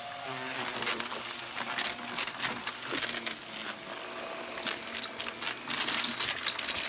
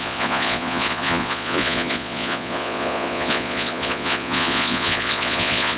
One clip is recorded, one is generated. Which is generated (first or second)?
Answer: second